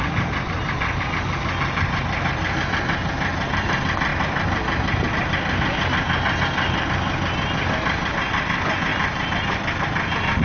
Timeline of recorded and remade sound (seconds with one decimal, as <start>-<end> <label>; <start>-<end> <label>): 0.0-10.4 recorded